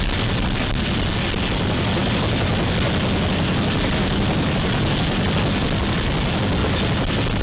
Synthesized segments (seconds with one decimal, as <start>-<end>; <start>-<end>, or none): none